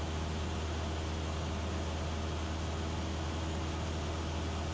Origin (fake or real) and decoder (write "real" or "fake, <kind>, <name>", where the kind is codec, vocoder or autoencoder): real